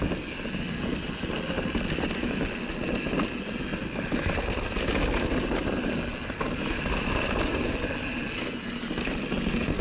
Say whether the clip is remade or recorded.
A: recorded